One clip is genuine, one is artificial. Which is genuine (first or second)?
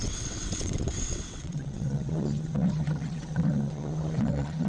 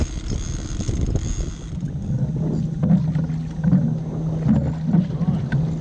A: second